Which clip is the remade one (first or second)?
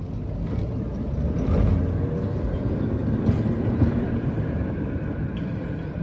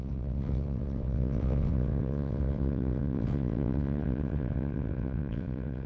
second